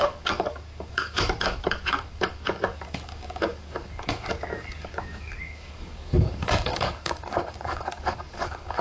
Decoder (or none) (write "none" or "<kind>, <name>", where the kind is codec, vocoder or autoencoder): codec, DAC